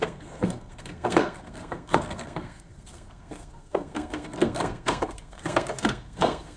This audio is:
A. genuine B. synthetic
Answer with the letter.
B